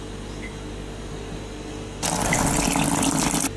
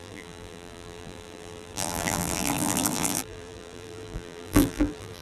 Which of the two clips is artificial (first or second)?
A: second